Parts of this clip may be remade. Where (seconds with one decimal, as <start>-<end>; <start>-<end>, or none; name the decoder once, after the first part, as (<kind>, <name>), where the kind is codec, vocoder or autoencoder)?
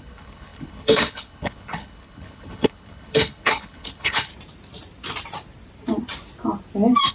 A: 0.0-4.3 (codec, HILCodec)